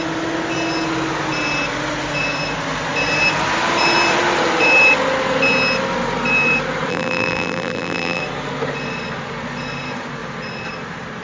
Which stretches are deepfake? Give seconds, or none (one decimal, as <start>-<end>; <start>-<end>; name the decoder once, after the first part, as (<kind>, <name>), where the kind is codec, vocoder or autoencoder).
6.9-8.2 (vocoder, BigVGAN v2)